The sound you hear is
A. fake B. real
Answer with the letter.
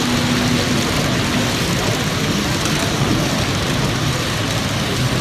B